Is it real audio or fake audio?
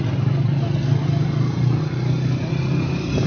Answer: real